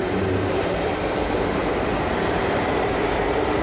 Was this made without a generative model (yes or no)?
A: no